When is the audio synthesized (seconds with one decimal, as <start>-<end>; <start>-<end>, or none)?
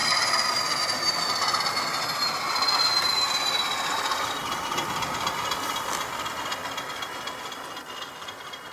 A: none